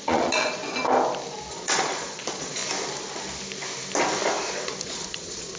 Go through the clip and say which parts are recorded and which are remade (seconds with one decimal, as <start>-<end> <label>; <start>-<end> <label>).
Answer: 0.0-0.6 remade; 0.6-1.5 recorded; 1.5-2.6 remade; 2.6-4.8 recorded; 4.8-5.6 remade